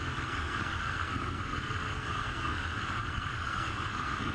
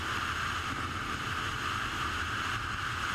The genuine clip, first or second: second